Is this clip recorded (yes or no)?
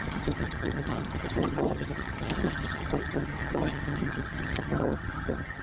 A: no